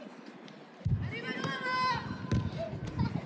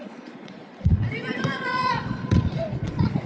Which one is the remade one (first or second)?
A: second